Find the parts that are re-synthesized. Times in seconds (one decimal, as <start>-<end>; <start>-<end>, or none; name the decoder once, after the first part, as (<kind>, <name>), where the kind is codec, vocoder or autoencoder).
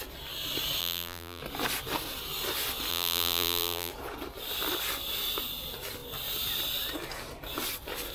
0.8-1.4 (vocoder, BigVGAN v2); 2.9-3.9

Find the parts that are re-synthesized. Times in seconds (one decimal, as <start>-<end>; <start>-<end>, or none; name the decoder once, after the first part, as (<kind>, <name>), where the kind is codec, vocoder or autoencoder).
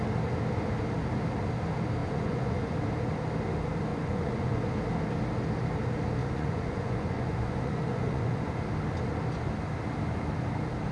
2.0-2.7 (vocoder, Vocos); 3.9-4.6; 6.2-8.5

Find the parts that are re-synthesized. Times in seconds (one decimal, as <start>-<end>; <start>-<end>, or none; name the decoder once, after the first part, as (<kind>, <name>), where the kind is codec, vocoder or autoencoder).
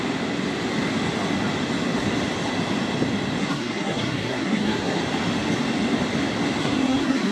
3.4-5.0 (codec, SNAC); 6.6-7.3